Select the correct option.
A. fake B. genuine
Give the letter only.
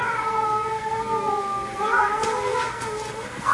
A